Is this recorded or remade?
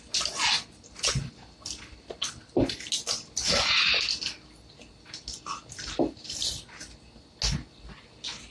recorded